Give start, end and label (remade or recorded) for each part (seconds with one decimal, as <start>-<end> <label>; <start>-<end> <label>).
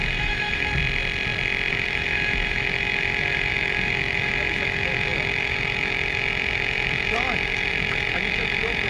0.0-0.7 remade; 0.7-1.7 recorded; 1.7-8.9 remade